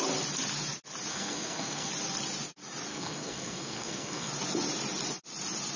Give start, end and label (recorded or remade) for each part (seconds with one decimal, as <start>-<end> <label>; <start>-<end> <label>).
0.0-1.1 recorded; 1.1-1.9 remade; 1.9-2.9 recorded; 2.9-4.3 remade; 4.3-5.8 recorded